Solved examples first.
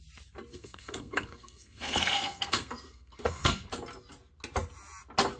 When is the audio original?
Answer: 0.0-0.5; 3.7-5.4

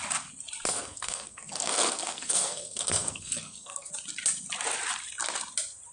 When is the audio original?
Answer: 0.0-0.7; 3.9-5.9

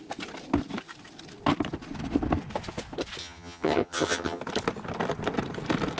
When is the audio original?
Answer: 0.0-3.2; 4.4-6.0

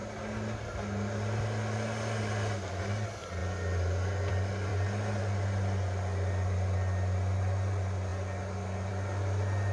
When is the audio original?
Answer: 0.0-9.7

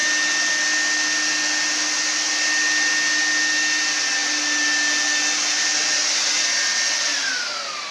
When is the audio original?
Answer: 0.0-7.9

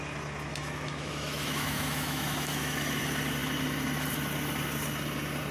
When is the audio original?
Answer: 0.0-0.5; 3.0-5.5

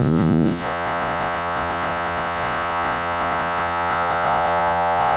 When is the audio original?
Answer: none

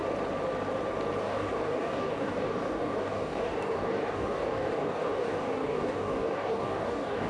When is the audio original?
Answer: 0.0-1.2